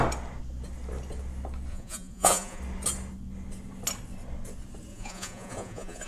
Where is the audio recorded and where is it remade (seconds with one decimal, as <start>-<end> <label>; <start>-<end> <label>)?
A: 0.0-1.7 recorded; 1.7-2.6 remade; 2.6-4.9 recorded; 4.9-6.1 remade